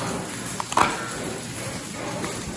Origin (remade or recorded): recorded